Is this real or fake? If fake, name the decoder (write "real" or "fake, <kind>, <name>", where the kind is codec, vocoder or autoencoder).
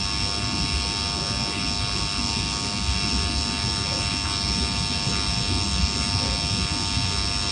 real